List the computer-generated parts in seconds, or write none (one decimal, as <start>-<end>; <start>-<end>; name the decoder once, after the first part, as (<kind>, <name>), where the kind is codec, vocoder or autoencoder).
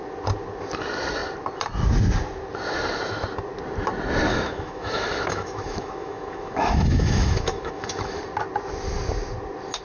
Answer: 4.3-8.2 (autoencoder, DAC-VAE)